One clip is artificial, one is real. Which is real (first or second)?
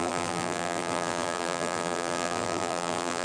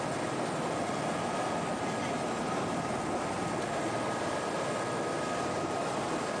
second